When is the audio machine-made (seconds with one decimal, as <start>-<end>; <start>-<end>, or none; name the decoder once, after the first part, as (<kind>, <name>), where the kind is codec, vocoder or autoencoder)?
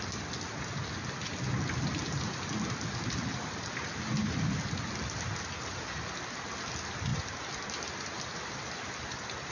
none